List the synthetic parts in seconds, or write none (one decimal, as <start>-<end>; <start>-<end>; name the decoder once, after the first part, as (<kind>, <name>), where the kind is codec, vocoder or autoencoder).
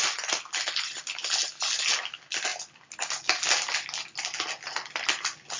none